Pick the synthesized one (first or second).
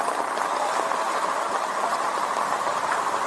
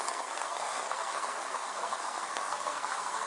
second